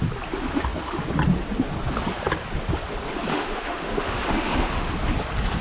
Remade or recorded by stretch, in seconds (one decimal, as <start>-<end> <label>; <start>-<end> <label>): 0.0-3.3 recorded; 3.3-4.9 remade; 4.9-5.6 recorded